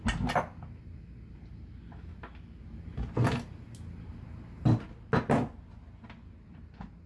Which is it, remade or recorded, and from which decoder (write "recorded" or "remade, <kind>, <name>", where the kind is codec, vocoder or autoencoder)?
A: recorded